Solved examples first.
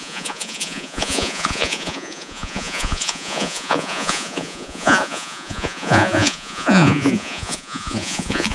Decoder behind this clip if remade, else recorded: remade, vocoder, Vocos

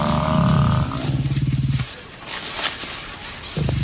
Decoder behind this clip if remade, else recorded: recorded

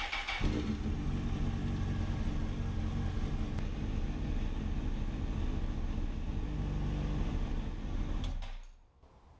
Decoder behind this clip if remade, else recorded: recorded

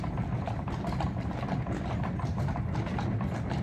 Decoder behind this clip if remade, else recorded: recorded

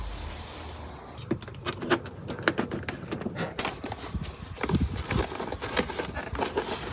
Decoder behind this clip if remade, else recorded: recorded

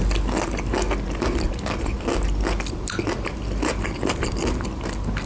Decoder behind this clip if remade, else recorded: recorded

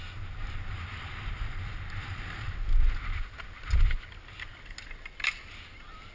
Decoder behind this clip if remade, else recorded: recorded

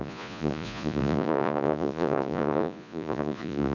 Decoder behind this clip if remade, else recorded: remade, vocoder, Vocos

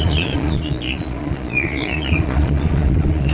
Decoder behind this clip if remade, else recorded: remade, vocoder, Vocos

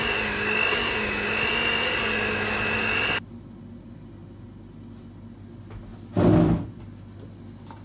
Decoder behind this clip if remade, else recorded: recorded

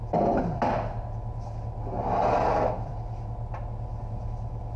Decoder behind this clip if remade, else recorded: recorded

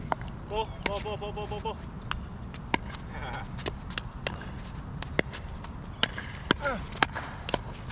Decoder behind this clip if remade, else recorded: recorded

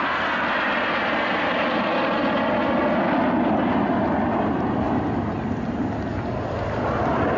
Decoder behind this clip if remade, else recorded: recorded